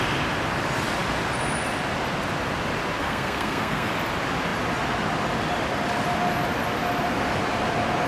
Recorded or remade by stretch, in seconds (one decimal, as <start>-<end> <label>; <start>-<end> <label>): 0.0-3.0 recorded; 3.0-3.9 remade; 3.9-8.1 recorded